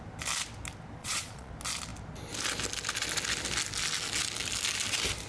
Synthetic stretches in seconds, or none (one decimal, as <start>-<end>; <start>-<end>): 1.0-1.5